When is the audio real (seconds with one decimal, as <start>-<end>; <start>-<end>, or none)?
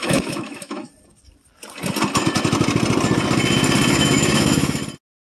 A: 0.9-3.9; 4.8-5.3